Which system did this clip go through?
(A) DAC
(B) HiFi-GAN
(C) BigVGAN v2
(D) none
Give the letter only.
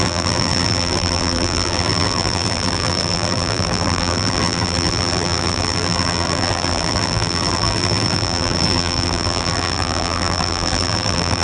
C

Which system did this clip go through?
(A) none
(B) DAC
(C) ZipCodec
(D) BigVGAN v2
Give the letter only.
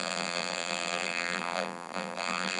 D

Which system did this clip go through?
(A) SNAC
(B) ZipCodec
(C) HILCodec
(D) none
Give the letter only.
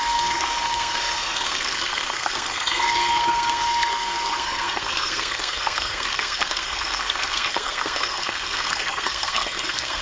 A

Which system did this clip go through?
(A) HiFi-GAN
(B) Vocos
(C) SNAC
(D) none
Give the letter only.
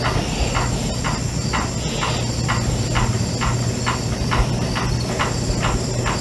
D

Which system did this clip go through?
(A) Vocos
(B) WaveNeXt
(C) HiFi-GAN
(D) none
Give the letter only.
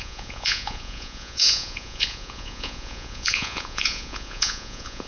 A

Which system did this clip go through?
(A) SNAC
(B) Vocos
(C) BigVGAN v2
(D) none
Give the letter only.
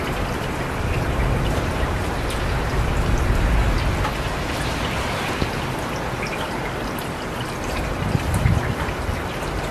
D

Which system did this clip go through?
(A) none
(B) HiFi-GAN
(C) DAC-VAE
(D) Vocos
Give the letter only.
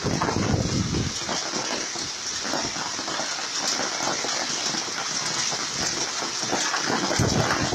A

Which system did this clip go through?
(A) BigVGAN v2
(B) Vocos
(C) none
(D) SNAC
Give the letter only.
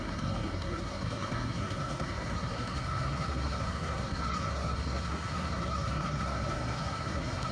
D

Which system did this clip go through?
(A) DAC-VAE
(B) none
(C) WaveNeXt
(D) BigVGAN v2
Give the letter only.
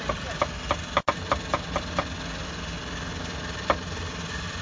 B